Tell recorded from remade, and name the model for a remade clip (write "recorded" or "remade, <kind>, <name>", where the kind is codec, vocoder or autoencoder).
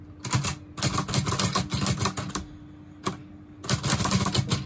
recorded